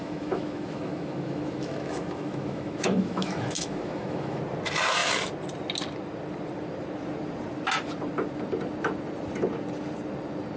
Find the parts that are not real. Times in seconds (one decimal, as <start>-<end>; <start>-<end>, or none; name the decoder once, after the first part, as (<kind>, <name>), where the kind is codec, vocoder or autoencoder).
0.0-4.4 (autoencoder, DAC-VAE)